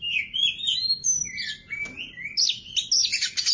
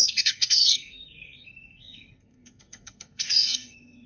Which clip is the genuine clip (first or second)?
first